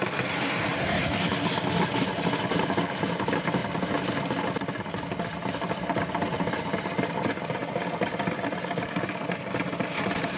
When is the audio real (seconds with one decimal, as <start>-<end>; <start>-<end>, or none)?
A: 0.0-10.4